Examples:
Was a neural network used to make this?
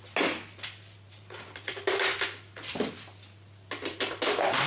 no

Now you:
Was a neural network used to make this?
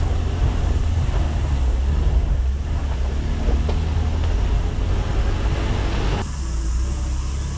no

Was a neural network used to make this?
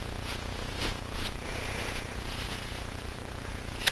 yes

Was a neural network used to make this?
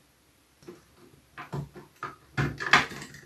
no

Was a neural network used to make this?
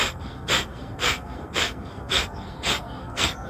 yes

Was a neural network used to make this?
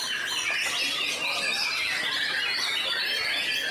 no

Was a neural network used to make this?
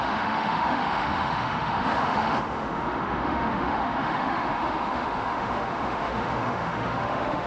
yes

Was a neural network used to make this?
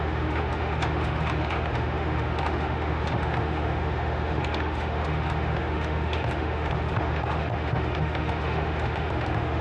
yes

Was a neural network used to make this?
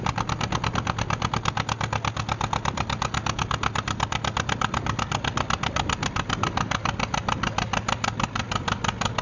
no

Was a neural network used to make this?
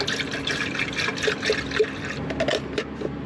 no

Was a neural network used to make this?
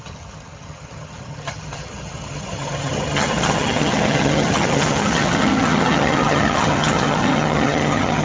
yes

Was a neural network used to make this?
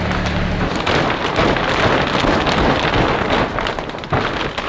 no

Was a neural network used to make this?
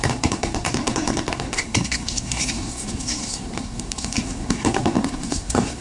yes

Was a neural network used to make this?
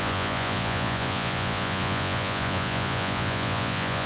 yes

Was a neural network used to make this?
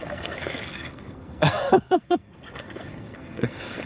yes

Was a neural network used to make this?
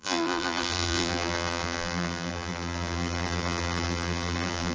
yes